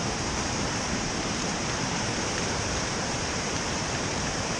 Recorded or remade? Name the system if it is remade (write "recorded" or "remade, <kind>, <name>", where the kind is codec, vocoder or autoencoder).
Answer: remade, vocoder, BigVGAN v2